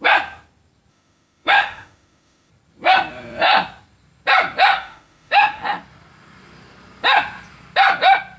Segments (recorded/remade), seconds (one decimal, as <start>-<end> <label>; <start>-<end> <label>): 0.0-0.9 recorded; 0.9-2.5 remade; 2.5-4.7 recorded; 4.7-5.6 remade; 5.6-8.4 recorded

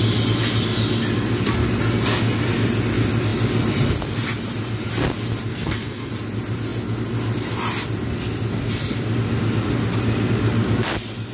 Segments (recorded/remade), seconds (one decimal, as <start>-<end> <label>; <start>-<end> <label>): 0.0-5.5 recorded; 5.5-6.1 remade; 6.1-11.3 recorded

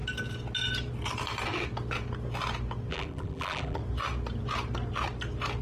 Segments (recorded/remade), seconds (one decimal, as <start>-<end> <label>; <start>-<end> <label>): 0.0-2.9 recorded; 2.9-3.8 remade; 3.8-5.6 recorded

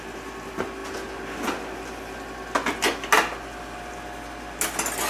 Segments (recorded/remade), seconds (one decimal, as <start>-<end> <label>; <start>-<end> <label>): 0.0-5.1 recorded

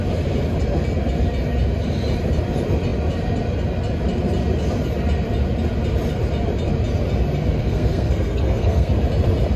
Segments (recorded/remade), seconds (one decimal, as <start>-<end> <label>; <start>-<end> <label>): 0.0-7.6 recorded; 7.6-8.9 remade; 8.9-9.6 recorded

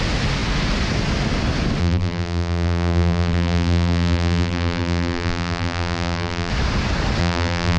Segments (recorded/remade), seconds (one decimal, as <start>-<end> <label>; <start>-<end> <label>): 0.0-1.8 recorded; 1.8-6.5 remade; 6.5-7.2 recorded; 7.2-7.8 remade